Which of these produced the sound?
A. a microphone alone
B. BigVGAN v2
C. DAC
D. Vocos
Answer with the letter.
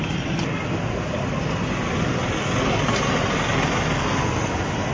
A